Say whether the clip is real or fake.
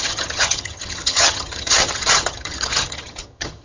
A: fake